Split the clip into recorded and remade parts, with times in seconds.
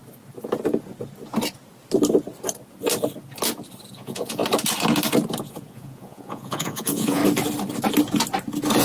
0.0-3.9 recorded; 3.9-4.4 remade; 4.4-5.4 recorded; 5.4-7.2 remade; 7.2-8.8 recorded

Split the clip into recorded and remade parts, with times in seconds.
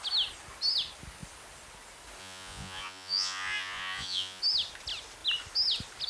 0.0-2.2 recorded; 2.2-4.4 remade; 4.4-6.1 recorded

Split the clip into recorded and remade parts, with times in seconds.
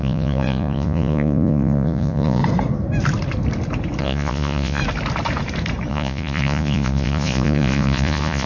0.0-2.4 remade; 2.4-4.0 recorded; 4.0-4.8 remade; 4.8-5.9 recorded; 5.9-8.5 remade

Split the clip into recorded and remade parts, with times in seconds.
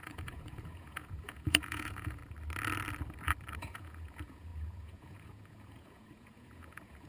0.0-2.2 remade; 2.2-3.6 recorded; 3.6-7.1 remade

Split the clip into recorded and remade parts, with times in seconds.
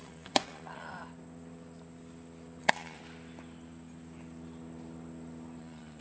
0.0-1.0 remade; 1.0-2.6 recorded; 2.6-3.0 remade; 3.0-5.6 recorded; 5.6-6.0 remade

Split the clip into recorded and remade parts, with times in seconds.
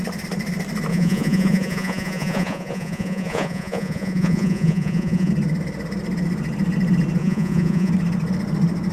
0.0-0.9 recorded; 0.9-5.3 remade; 5.3-7.2 recorded; 7.2-7.9 remade; 7.9-8.9 recorded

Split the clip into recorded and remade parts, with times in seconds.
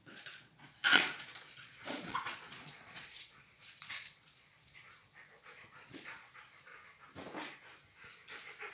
0.0-6.7 remade; 6.7-8.7 recorded